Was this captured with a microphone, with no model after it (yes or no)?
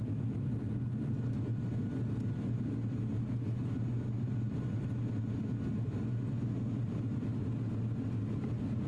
yes